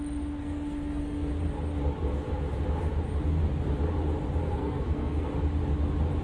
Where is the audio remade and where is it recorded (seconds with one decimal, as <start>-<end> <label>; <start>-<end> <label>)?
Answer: 0.0-0.4 recorded; 0.4-1.3 remade; 1.3-4.4 recorded; 4.4-5.3 remade; 5.3-6.2 recorded